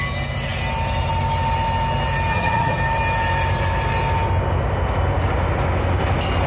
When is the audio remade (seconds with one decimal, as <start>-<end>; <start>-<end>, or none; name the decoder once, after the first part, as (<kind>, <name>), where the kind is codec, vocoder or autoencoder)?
2.3-2.8 (vocoder, HiFi-GAN)